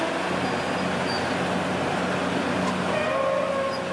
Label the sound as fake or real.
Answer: real